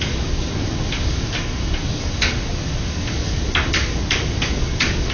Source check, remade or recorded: remade